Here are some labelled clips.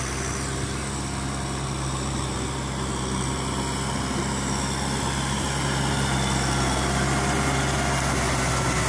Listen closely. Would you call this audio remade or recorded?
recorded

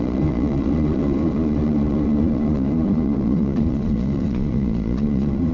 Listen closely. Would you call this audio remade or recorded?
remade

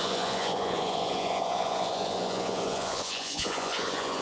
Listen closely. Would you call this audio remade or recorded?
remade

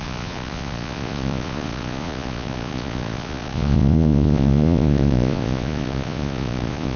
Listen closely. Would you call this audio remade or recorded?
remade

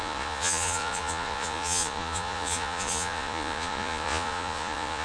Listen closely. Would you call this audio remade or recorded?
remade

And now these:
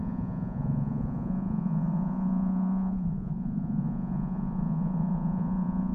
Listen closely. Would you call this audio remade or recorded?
remade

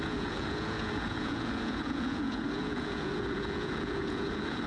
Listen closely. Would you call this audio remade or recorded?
remade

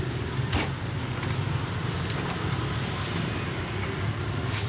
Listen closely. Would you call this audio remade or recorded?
recorded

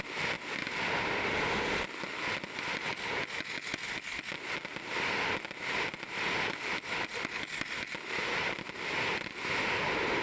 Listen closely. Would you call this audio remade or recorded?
recorded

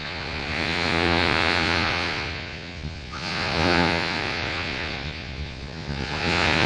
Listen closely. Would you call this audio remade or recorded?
remade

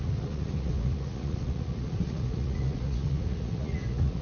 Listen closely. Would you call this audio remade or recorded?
remade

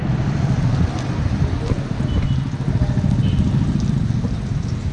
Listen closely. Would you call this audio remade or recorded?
recorded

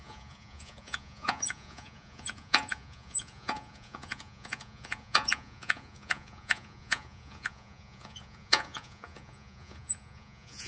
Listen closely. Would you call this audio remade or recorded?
remade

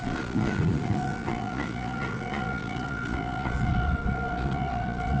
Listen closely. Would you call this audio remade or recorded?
remade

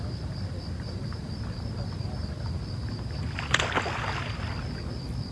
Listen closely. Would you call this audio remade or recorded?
recorded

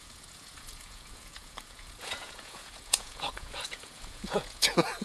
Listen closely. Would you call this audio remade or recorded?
remade